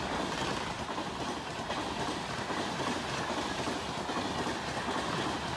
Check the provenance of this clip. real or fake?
real